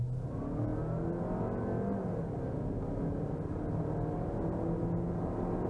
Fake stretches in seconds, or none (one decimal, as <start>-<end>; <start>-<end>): none